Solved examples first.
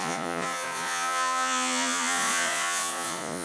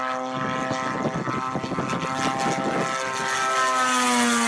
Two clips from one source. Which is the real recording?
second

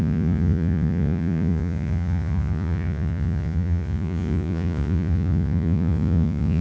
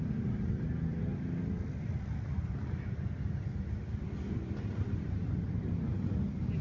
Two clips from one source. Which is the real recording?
second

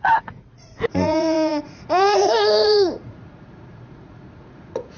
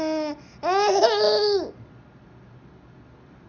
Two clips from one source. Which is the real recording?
second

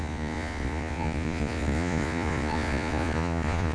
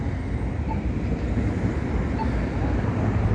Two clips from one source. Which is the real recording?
second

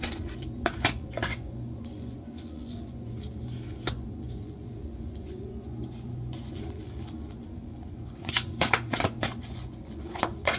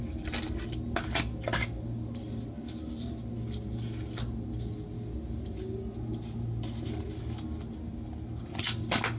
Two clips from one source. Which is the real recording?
second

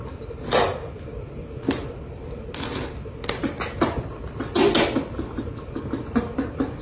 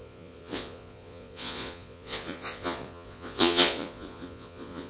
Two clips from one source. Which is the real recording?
first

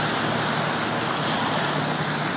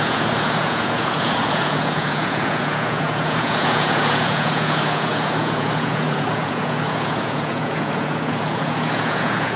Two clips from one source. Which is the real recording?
first